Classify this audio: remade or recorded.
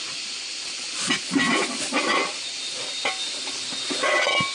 recorded